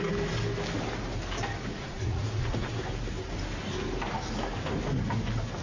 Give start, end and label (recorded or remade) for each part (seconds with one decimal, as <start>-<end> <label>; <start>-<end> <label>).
0.0-1.7 recorded; 1.7-2.7 remade; 2.7-5.6 recorded